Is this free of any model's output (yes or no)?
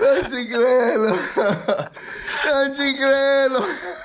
yes